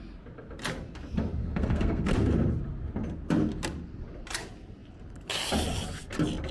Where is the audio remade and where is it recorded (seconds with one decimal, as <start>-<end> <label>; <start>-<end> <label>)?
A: 0.0-1.4 recorded; 1.4-2.1 remade; 2.1-6.5 recorded